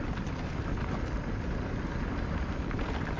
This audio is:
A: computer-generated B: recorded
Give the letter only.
B